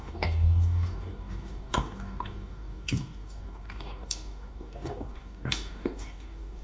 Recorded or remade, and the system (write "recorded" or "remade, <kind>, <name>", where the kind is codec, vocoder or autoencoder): remade, codec, DAC